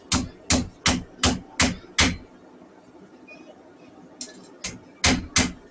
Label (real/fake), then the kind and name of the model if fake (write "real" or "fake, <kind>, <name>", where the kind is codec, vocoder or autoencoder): real